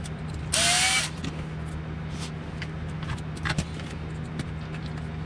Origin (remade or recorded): recorded